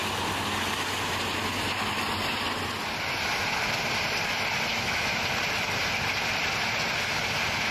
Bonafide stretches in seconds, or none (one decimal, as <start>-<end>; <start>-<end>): 0.0-4.7; 5.2-7.7